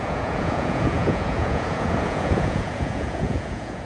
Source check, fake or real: fake